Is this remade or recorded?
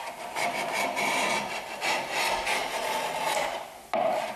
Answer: recorded